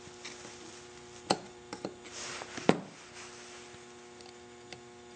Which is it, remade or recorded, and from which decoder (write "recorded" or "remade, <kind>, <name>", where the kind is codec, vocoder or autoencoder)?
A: recorded